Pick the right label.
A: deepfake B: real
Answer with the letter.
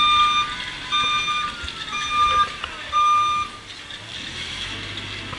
B